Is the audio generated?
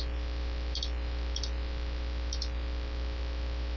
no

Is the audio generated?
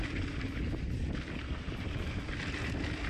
no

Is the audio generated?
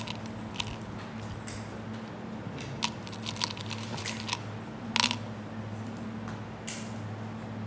no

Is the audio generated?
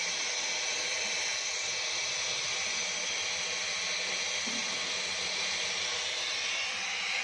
no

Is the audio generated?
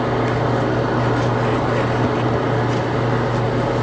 no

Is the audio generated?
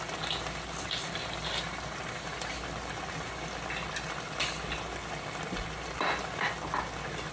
no